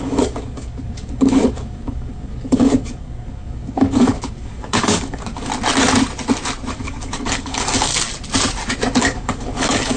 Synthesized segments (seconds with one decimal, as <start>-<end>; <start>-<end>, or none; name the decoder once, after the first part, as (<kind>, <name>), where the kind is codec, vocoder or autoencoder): 0.0-5.5 (codec, DAC); 6.7-7.9; 9.0-10.0